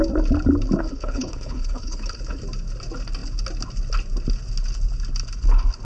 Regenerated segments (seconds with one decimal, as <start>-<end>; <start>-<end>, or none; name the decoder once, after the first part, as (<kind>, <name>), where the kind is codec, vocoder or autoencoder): 0.8-2.4 (codec, HILCodec)